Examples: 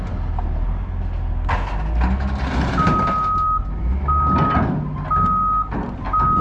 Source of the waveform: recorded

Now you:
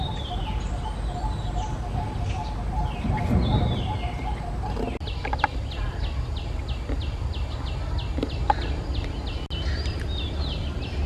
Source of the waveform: recorded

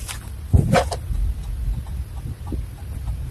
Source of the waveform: recorded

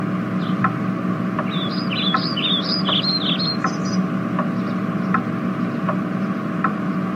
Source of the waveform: recorded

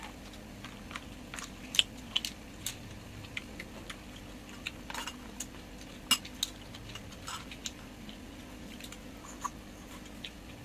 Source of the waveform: recorded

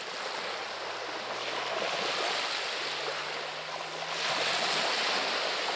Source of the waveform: recorded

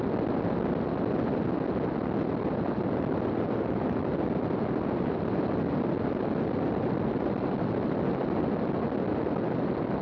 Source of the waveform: recorded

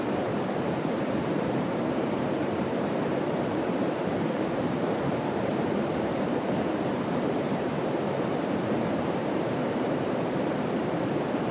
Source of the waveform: remade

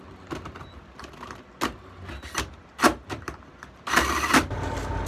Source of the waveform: recorded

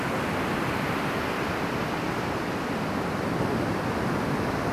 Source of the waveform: recorded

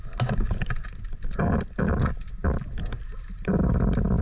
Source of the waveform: recorded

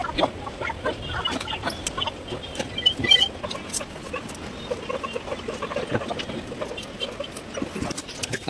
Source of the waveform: recorded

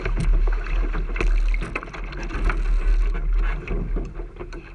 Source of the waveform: recorded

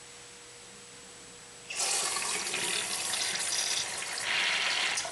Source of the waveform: recorded